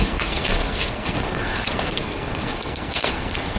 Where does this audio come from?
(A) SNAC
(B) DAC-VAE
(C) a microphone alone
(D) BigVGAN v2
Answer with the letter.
A